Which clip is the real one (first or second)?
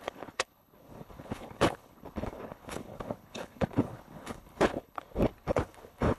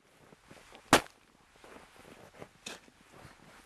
second